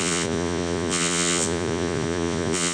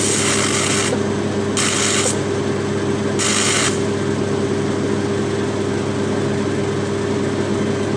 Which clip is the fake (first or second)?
first